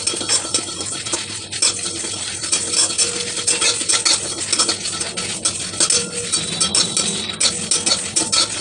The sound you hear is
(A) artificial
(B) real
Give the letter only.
B